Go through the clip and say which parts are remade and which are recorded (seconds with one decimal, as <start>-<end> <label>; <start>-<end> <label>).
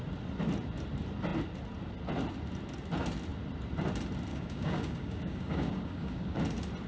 0.0-4.3 recorded; 4.3-6.4 remade; 6.4-6.9 recorded